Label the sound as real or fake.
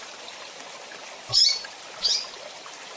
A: real